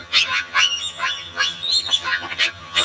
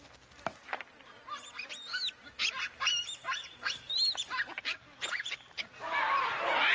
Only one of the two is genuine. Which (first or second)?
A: second